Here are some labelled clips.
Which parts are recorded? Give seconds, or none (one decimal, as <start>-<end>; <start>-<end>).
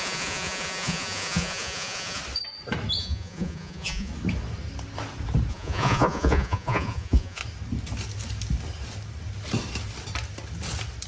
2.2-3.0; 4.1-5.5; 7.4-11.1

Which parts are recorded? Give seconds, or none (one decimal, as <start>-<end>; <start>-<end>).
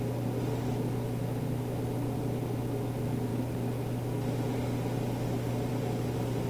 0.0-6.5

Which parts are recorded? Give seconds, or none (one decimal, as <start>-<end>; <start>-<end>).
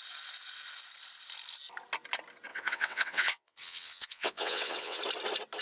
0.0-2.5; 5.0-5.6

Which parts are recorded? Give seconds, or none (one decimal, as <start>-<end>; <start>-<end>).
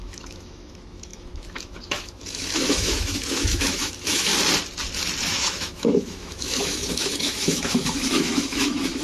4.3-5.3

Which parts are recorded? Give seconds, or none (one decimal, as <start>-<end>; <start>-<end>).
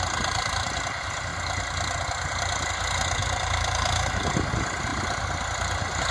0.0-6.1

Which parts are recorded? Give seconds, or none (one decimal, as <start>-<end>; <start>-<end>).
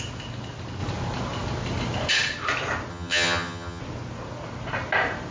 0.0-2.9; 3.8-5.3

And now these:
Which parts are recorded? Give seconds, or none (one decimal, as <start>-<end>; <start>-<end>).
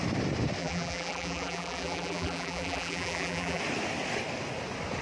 0.0-0.6; 3.6-5.0